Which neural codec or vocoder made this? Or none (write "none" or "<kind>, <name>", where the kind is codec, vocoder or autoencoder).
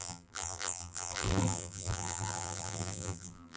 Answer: vocoder, BigVGAN v2